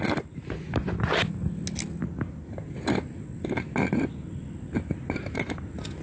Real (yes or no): yes